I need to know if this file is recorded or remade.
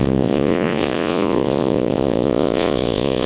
remade